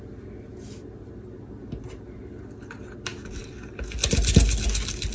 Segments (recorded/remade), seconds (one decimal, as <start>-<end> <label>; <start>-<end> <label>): 0.0-5.1 recorded